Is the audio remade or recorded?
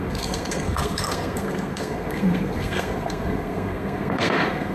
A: remade